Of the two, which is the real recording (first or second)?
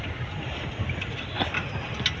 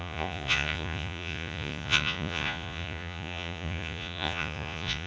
first